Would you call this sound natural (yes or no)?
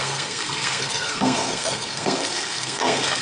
no